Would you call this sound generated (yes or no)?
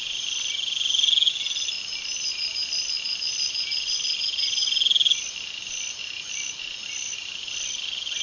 no